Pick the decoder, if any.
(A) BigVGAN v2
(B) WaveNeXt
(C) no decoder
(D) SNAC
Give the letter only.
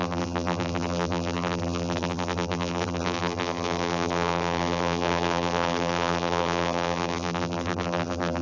A